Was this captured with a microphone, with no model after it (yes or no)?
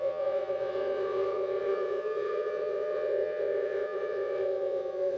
no